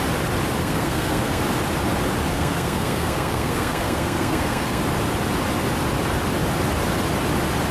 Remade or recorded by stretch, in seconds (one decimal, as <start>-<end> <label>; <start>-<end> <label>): 0.0-0.6 recorded; 0.6-1.4 remade; 1.4-2.3 recorded; 2.3-4.8 remade; 4.8-7.7 recorded